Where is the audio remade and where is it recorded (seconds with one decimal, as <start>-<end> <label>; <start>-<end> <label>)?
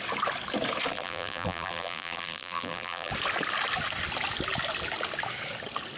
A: 0.0-0.9 recorded; 0.9-3.1 remade; 3.1-6.0 recorded